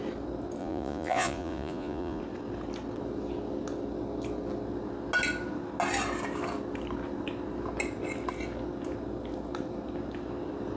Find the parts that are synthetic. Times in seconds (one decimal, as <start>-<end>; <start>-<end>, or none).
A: 0.6-2.2

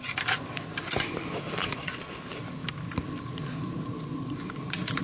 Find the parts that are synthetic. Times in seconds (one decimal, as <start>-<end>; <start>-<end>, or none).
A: 1.6-2.2